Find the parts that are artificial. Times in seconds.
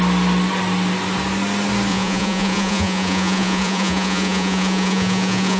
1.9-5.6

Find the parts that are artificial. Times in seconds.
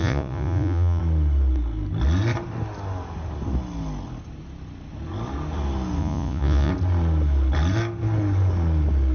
0.0-1.0; 6.0-6.7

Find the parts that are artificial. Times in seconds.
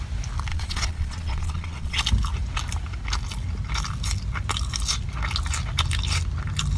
0.5-2.0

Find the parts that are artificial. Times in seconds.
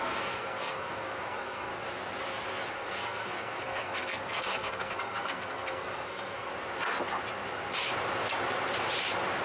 0.0-1.7; 2.7-6.5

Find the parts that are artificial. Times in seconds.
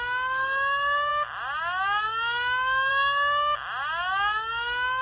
none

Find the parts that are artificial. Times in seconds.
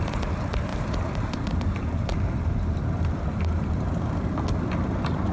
0.0-5.3